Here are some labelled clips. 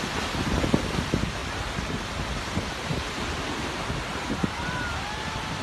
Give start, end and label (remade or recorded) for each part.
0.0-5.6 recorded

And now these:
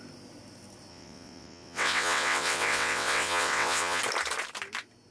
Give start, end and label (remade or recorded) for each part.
0.0-0.9 recorded; 0.9-4.0 remade; 4.0-5.1 recorded

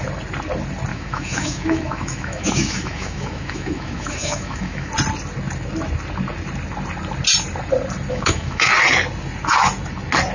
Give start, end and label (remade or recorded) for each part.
0.0-0.9 recorded; 0.9-4.9 remade; 4.9-8.1 recorded; 8.1-8.7 remade; 8.7-10.3 recorded

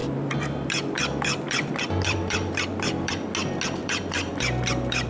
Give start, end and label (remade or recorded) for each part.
0.0-3.1 remade; 3.1-3.8 recorded; 3.8-4.3 remade; 4.3-5.1 recorded

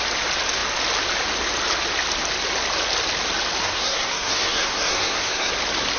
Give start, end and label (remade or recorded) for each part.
0.0-3.6 recorded; 3.6-5.5 remade; 5.5-6.0 recorded